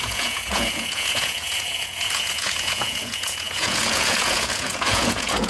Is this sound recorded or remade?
remade